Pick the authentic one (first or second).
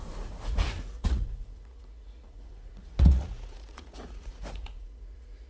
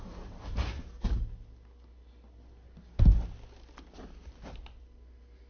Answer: second